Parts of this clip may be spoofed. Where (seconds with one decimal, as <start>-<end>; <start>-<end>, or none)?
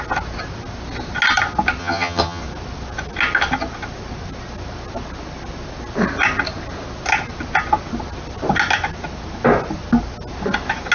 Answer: 1.8-2.4